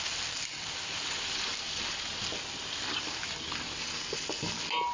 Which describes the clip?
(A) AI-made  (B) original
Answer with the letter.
B